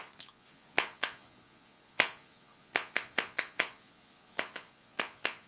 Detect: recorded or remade remade